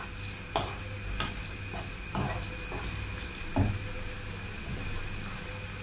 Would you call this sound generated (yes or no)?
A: no